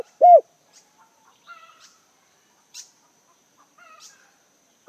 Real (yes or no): no